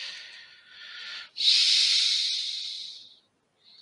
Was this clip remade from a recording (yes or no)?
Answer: no